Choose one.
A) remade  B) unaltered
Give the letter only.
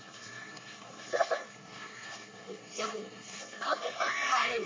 A